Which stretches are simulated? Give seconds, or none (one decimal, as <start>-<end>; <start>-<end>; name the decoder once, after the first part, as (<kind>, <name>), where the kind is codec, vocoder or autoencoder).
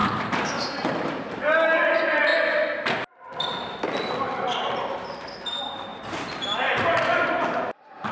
0.0-2.3 (vocoder, BigVGAN v2); 4.7-8.1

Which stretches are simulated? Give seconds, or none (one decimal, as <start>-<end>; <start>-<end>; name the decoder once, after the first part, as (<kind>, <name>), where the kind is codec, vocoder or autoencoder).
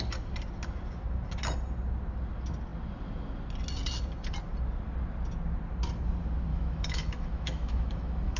6.5-8.4 (autoencoder, DAC-VAE)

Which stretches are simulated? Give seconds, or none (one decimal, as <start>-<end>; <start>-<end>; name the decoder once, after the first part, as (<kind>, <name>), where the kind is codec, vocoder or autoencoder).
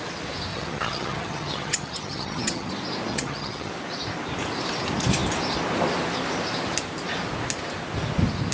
0.5-2.7 (vocoder, HiFi-GAN); 3.1-3.7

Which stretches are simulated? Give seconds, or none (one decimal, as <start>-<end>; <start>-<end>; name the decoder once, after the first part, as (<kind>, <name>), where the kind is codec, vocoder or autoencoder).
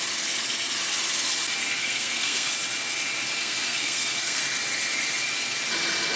1.8-2.5 (codec, SNAC); 3.4-4.4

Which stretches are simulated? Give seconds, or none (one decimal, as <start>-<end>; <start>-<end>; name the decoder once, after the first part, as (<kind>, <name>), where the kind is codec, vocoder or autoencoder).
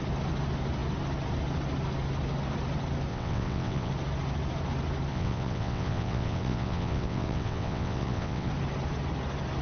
3.1-3.9 (vocoder, WaveNeXt); 5.1-8.5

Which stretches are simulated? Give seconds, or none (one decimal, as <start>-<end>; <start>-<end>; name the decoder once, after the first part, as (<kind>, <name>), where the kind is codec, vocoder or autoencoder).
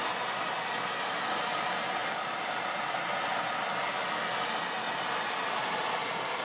0.0-2.0 (vocoder, BigVGAN v2); 5.5-6.4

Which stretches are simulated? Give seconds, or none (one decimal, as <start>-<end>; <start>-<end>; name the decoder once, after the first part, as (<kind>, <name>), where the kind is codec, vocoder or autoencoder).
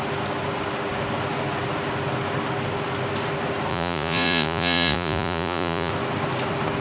3.7-5.9 (vocoder, Vocos)